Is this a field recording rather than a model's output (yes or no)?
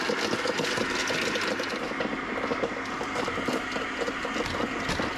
no